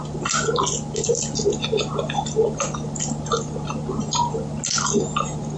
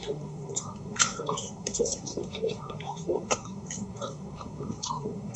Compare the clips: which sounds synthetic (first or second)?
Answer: second